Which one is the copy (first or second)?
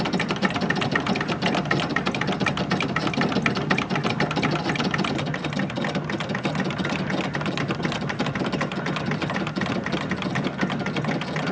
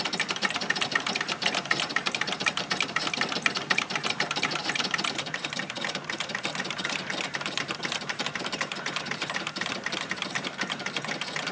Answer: second